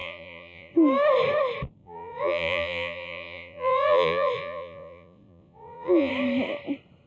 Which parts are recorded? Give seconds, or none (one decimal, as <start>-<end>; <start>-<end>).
0.7-1.8; 6.1-7.1

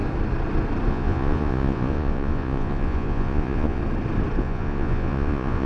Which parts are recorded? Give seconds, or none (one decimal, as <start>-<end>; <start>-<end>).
0.0-0.9; 3.8-4.4

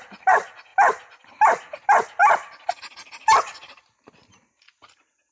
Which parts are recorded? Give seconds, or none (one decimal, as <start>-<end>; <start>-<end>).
0.0-5.3

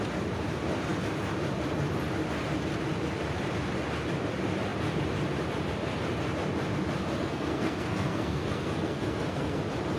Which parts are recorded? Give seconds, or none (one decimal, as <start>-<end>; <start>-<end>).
0.0-7.2; 9.6-10.0

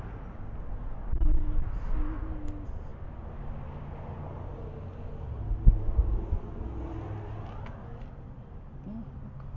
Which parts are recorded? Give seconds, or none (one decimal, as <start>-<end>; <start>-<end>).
0.0-9.6

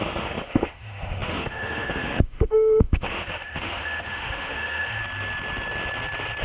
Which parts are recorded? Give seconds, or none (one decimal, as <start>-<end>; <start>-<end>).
5.0-6.4

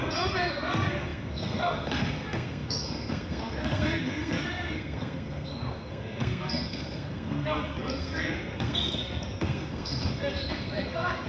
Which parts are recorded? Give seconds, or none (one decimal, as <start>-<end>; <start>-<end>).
none